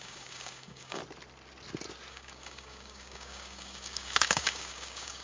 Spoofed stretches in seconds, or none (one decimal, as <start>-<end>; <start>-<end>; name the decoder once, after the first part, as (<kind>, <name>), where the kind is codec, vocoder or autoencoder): 0.0-1.0 (codec, DAC); 2.1-5.2